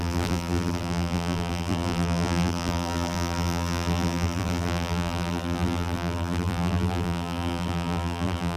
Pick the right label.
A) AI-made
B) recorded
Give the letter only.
A